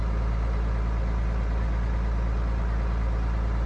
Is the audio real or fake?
real